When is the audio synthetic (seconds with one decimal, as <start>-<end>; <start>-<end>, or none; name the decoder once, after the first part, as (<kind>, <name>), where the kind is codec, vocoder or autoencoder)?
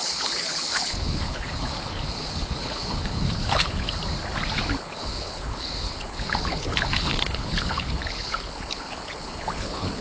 0.0-4.0 (codec, HILCodec); 4.8-10.0